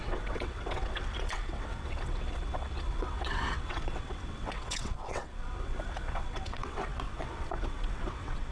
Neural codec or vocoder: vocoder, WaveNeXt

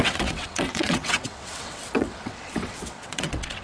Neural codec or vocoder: vocoder, WaveNeXt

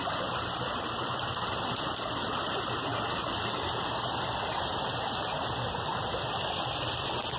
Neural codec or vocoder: none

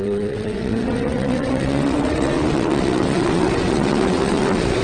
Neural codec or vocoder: vocoder, WaveNeXt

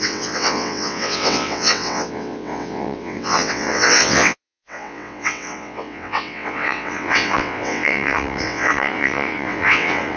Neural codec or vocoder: vocoder, WaveNeXt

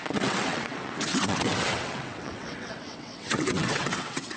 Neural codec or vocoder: vocoder, WaveNeXt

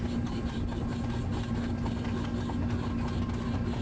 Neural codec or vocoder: none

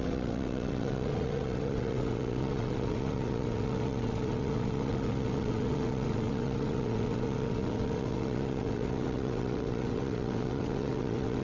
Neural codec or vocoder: vocoder, WaveNeXt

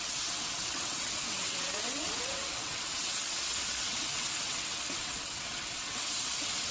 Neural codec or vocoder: vocoder, WaveNeXt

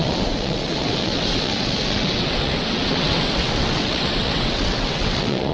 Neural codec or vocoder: vocoder, WaveNeXt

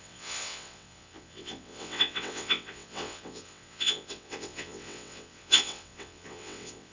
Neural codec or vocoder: vocoder, WaveNeXt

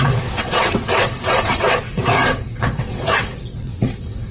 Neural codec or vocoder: vocoder, WaveNeXt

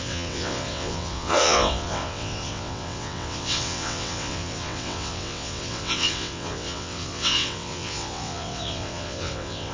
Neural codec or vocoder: vocoder, WaveNeXt